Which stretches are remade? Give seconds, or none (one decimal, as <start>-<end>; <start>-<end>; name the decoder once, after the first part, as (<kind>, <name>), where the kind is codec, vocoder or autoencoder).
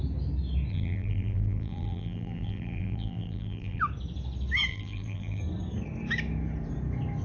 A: 0.7-3.8 (vocoder, BigVGAN v2); 4.7-5.4